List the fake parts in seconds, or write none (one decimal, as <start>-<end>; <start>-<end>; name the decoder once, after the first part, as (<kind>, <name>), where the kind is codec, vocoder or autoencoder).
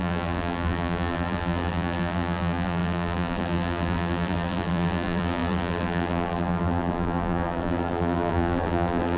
0.0-9.2 (vocoder, BigVGAN v2)